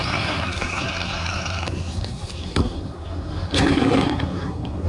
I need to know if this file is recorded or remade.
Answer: remade